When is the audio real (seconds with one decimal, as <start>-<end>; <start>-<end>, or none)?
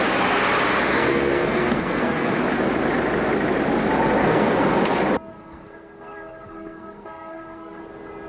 0.0-0.9; 2.4-4.2; 4.8-5.3; 7.8-8.3